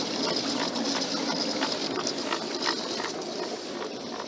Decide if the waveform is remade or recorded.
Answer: recorded